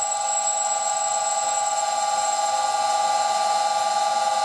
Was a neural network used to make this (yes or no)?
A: no